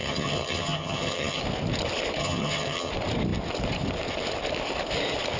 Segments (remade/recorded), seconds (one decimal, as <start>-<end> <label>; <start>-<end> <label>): 0.0-1.4 remade; 1.4-2.2 recorded; 2.2-2.9 remade; 2.9-5.4 recorded